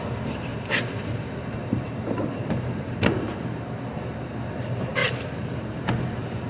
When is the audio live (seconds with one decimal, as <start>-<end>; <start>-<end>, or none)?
0.0-0.5; 3.8-5.0